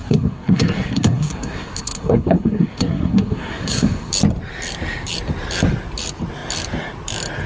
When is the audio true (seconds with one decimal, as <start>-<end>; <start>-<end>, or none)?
4.1-7.5